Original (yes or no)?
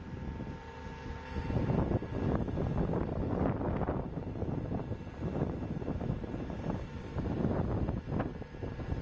yes